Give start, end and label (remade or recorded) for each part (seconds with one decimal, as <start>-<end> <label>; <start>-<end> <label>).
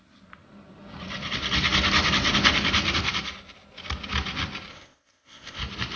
0.0-4.7 recorded; 4.7-5.6 remade; 5.6-6.0 recorded